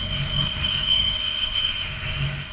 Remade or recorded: remade